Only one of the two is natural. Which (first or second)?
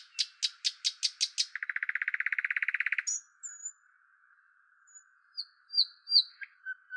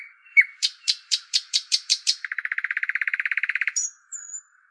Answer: first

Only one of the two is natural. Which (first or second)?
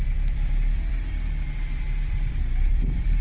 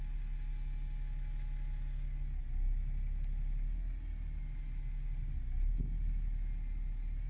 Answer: second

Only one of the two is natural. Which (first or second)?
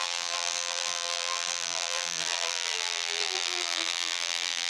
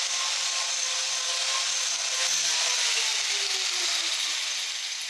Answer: second